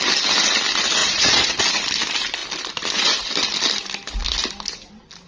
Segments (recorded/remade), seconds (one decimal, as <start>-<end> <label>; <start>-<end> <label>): 0.0-1.0 recorded; 1.0-1.6 remade; 1.6-5.3 recorded